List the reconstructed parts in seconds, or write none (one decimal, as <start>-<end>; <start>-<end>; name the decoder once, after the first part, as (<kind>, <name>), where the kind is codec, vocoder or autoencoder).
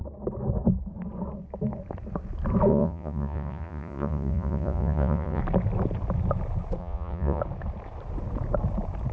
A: 2.7-5.4 (vocoder, Vocos); 6.8-7.4